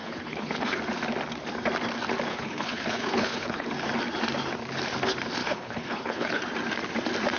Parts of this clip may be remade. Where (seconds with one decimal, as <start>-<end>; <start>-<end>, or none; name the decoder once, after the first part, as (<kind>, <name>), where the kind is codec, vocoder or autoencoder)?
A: 0.0-0.8 (codec, HILCodec); 2.3-3.7; 5.4-6.4